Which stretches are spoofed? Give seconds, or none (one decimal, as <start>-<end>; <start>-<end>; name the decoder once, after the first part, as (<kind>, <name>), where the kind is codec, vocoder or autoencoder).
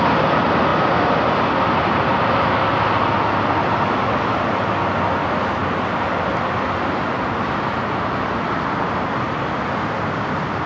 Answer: none